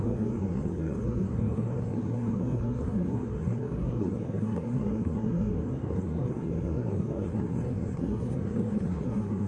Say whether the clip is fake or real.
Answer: fake